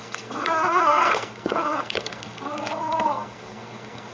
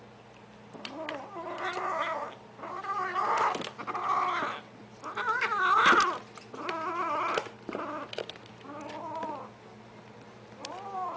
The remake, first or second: first